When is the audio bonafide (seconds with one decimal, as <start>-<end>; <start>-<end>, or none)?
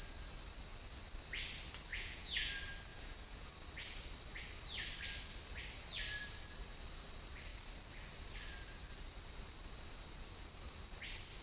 0.0-1.9; 2.5-2.9; 3.5-11.4